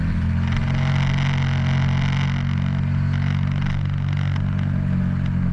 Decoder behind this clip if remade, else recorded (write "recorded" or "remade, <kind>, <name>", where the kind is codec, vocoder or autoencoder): recorded